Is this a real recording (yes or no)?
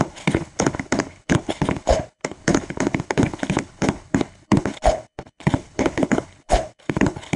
no